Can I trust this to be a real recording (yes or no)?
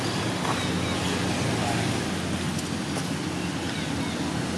yes